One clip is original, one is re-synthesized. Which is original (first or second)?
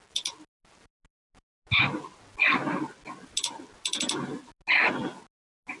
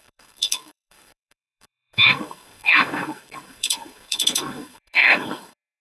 first